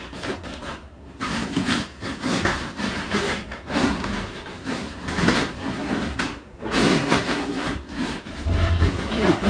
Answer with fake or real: fake